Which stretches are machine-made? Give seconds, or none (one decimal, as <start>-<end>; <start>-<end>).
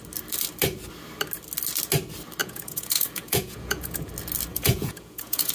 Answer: 2.4-4.1; 4.5-5.5